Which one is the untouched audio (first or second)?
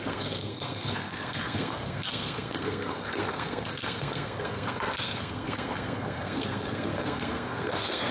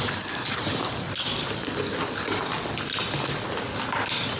second